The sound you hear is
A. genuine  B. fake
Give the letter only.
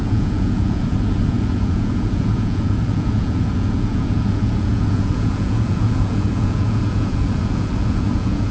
B